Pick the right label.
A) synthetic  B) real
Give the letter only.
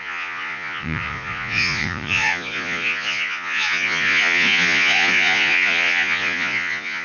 A